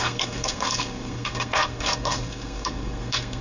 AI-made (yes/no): yes